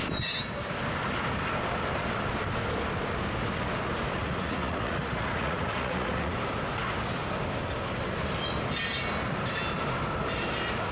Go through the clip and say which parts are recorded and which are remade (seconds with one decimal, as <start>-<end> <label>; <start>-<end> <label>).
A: 0.0-4.2 recorded; 4.2-6.3 remade; 6.3-10.9 recorded